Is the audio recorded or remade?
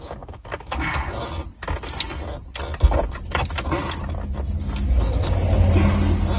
recorded